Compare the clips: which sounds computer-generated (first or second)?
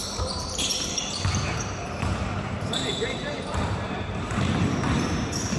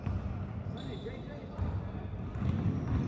first